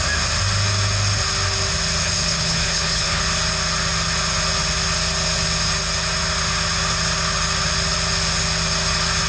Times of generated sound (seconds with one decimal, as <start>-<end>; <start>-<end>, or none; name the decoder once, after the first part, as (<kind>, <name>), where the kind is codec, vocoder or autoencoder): 2.0-3.2 (codec, HILCodec)